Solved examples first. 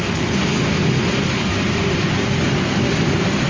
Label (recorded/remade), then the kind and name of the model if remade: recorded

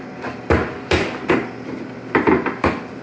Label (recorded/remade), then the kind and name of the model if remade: recorded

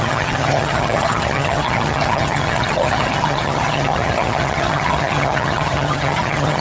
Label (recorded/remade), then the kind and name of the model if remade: remade, vocoder, HiFi-GAN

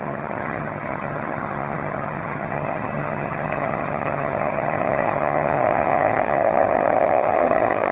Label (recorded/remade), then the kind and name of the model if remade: remade, vocoder, HiFi-GAN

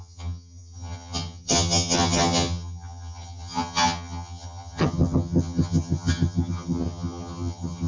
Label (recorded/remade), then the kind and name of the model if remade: remade, vocoder, HiFi-GAN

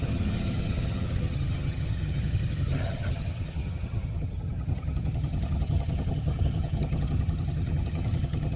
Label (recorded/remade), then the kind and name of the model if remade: remade, vocoder, HiFi-GAN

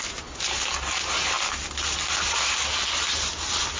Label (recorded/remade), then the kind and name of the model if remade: recorded